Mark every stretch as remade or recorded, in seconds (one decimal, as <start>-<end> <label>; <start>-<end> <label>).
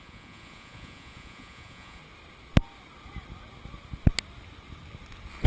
0.0-2.0 remade; 2.0-5.5 recorded